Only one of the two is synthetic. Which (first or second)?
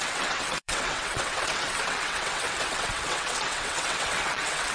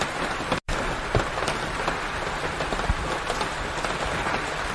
first